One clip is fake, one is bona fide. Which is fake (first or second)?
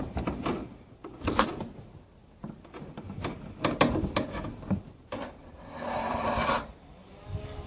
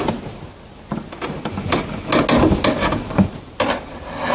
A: first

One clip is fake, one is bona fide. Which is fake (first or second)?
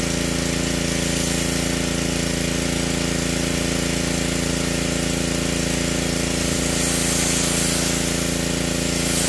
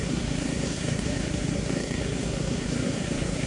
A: second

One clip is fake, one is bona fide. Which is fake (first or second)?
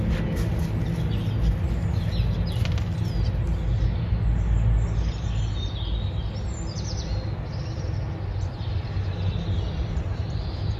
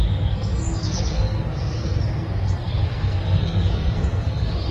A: second